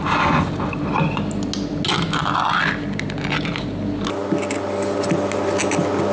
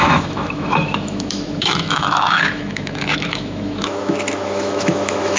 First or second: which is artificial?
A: second